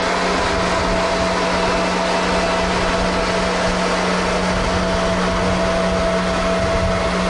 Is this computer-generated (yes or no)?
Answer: no